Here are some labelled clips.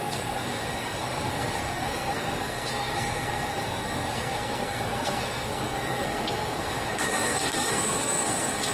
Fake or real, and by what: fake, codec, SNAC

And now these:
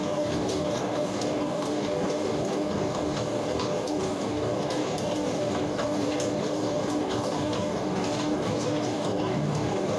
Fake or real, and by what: fake, codec, DAC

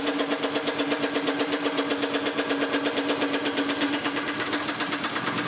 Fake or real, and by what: real